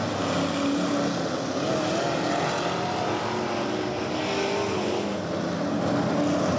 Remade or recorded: recorded